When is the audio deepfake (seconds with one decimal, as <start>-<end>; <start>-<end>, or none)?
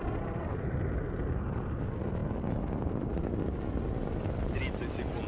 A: none